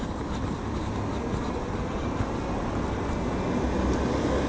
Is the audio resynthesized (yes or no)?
no